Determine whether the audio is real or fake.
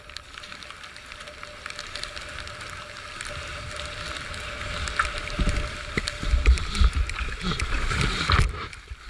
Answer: real